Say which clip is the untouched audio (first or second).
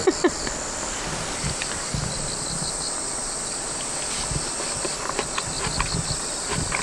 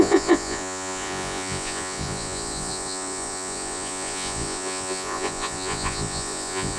first